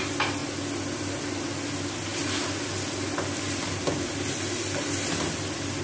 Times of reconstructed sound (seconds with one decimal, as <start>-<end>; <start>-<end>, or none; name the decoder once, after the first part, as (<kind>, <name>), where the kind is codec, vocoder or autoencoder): none